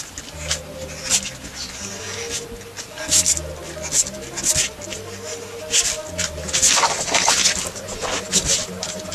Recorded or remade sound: recorded